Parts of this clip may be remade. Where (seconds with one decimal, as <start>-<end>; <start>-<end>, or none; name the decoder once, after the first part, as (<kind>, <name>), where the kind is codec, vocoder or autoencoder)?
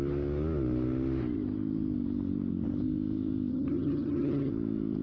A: 3.5-4.5 (vocoder, HiFi-GAN)